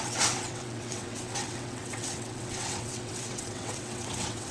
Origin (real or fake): fake